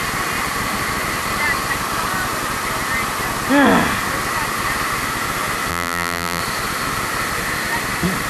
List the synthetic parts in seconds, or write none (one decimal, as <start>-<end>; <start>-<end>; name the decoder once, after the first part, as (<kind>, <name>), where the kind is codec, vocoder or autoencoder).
5.7-6.4 (vocoder, BigVGAN v2)